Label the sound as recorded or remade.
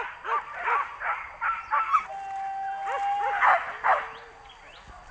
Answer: recorded